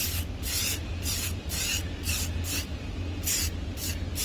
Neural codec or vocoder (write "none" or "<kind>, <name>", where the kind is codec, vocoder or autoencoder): none